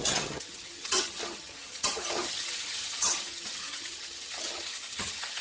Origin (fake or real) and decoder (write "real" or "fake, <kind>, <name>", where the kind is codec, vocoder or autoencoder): fake, vocoder, HiFi-GAN